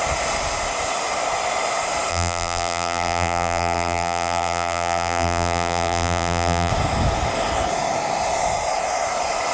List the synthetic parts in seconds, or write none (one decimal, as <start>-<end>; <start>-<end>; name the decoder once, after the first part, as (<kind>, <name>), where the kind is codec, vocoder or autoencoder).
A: 2.1-6.7 (vocoder, BigVGAN v2)

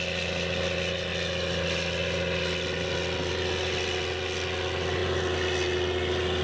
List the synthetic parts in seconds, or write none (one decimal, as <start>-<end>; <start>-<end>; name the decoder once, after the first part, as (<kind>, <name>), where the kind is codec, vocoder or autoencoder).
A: none

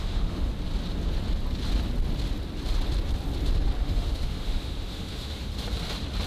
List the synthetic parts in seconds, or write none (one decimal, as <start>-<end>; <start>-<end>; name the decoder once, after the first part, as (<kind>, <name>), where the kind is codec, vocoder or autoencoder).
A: 0.0-0.5 (autoencoder, DAC-VAE); 3.8-5.5

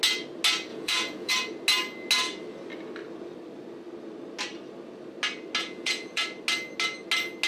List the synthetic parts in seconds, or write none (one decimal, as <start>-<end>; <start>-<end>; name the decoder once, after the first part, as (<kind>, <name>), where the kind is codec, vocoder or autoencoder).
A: 0.7-1.3 (vocoder, Vocos); 5.6-6.2

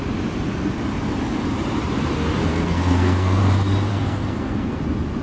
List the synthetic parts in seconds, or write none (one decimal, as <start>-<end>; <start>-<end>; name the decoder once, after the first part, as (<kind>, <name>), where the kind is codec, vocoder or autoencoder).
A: 2.5-3.4 (codec, SNAC); 3.9-4.8